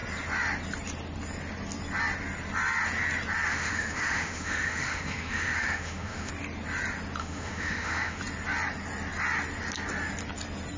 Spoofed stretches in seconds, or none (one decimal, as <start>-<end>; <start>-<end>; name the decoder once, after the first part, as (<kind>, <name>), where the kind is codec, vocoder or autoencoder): 3.5-6.3 (autoencoder, DAC-VAE); 7.2-8.2